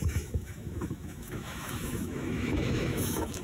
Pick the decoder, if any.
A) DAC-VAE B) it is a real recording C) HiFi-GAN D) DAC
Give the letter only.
A